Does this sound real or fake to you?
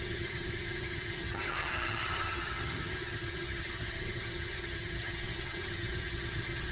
fake